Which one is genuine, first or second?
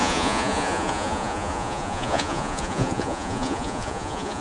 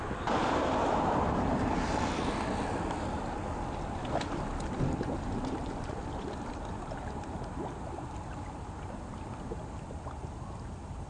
second